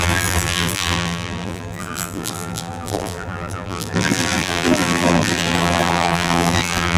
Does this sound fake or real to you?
fake